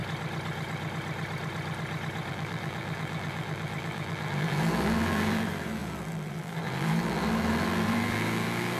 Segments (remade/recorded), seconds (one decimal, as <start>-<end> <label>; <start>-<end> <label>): 0.0-2.3 recorded; 2.3-8.8 remade